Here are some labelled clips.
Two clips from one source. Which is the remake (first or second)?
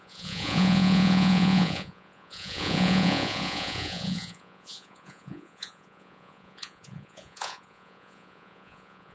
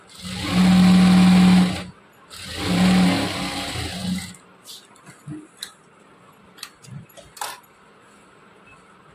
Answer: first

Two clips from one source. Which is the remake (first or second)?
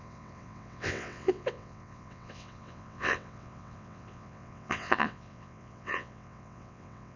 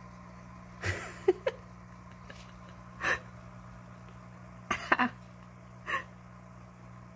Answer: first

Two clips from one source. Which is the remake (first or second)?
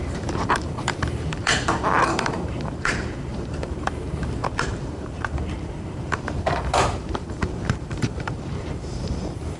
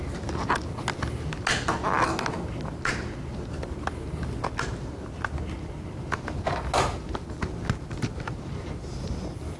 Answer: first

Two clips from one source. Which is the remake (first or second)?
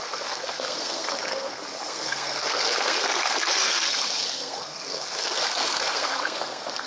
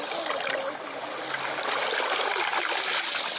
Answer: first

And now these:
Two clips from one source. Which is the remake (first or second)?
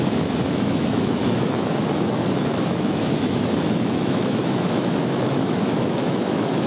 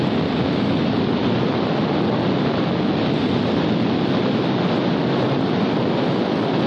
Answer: first